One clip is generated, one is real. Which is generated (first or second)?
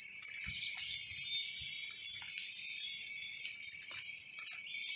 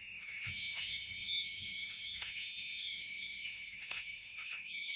second